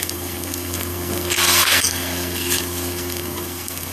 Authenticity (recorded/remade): remade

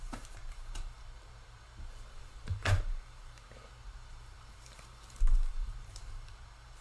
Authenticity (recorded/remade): remade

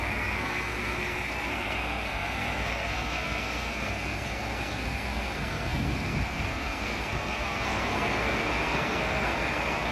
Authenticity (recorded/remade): remade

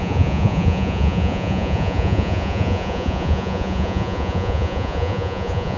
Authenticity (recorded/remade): remade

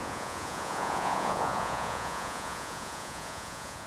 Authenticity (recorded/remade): remade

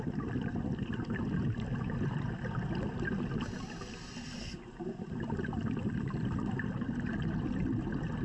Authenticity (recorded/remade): recorded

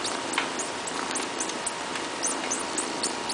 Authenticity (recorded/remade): recorded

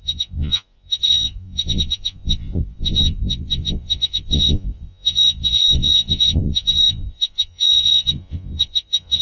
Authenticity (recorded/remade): remade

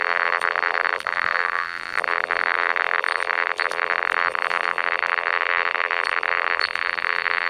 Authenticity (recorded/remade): remade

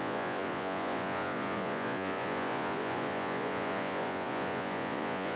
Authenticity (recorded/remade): remade